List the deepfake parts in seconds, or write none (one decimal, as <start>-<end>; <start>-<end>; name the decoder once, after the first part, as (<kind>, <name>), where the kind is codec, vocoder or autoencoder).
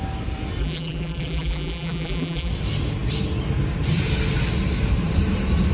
0.6-2.5 (vocoder, BigVGAN v2)